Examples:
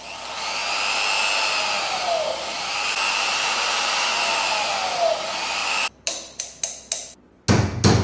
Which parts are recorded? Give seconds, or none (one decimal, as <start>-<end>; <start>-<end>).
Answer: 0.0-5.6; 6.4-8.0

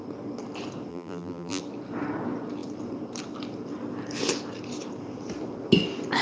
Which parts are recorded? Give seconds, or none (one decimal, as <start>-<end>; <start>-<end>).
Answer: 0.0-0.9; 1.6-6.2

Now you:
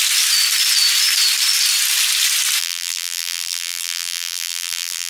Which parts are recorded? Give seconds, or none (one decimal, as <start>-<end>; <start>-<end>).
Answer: 0.0-2.6